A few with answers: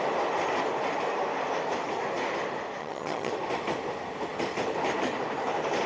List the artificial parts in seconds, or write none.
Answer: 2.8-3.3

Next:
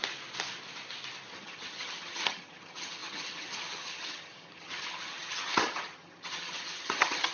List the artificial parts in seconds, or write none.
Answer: 1.3-7.3

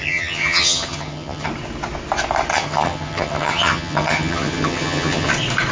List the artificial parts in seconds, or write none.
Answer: 0.0-1.5; 2.5-5.3

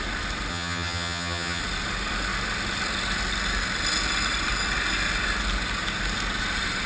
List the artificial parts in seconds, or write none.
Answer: 0.5-1.6